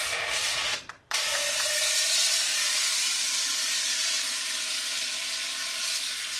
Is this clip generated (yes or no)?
yes